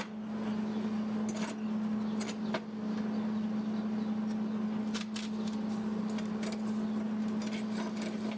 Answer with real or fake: real